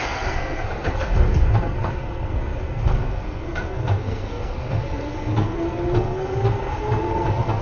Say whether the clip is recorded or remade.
remade